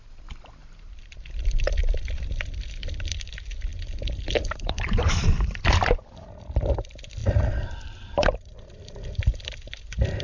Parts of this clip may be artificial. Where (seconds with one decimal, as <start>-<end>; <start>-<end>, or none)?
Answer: 0.6-1.8; 3.7-6.7; 7.2-9.5